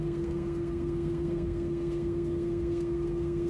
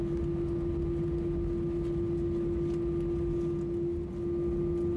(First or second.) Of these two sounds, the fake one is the first